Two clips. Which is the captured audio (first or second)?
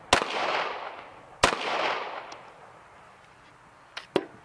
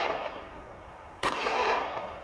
first